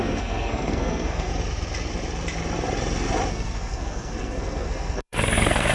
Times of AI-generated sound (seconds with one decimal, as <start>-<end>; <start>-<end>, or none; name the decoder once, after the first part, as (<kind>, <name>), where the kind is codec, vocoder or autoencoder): 0.0-1.3 (codec, SNAC); 3.3-5.7